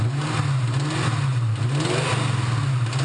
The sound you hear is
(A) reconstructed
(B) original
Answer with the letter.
B